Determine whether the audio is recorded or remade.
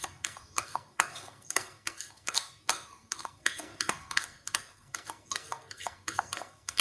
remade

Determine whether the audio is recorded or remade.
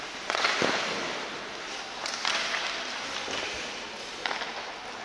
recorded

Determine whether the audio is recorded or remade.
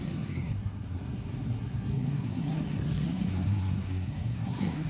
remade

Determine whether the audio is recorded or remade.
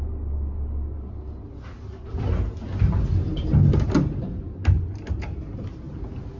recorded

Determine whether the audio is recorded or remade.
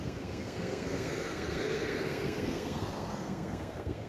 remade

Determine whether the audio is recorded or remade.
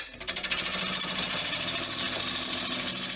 recorded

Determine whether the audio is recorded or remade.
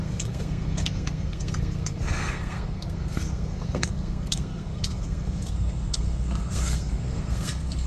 remade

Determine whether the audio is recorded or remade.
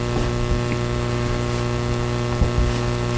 recorded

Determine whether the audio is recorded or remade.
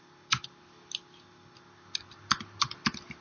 recorded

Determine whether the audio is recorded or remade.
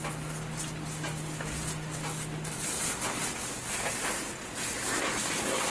recorded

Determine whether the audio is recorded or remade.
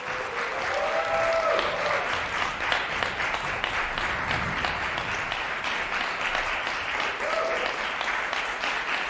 recorded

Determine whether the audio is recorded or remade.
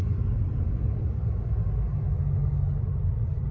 recorded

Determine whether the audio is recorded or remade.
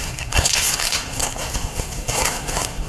remade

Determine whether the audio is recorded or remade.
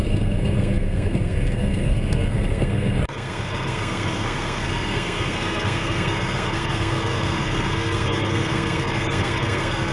remade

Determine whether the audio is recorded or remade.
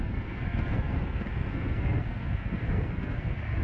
remade